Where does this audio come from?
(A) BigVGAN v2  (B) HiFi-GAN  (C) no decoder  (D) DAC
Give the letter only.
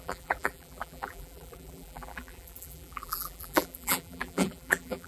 A